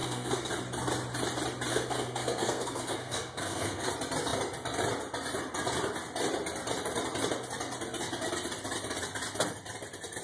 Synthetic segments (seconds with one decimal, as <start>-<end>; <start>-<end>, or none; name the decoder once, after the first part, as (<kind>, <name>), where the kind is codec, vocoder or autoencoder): 0.0-0.5 (codec, SNAC); 1.7-3.9